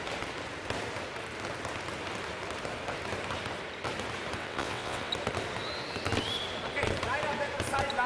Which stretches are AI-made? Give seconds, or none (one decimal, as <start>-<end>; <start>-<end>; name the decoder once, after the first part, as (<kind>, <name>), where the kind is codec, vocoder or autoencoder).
4.4-5.1 (vocoder, WaveNeXt)